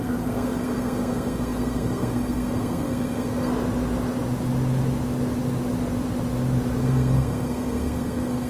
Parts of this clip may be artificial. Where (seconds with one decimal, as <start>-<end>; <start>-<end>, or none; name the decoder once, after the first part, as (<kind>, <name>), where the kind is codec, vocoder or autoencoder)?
0.0-3.5 (codec, SNAC); 6.8-8.5